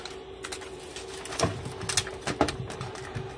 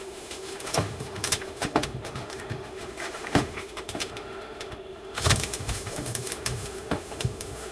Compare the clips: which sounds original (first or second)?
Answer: first